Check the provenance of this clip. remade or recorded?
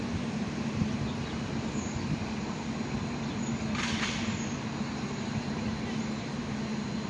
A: recorded